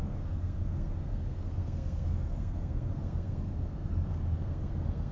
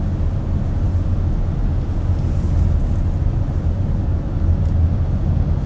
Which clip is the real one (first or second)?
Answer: second